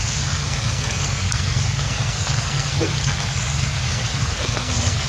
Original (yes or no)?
no